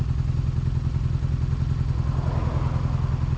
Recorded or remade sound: recorded